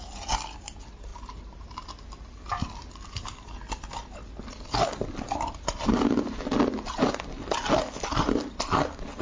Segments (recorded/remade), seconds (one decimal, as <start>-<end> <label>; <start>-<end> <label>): 0.0-9.2 recorded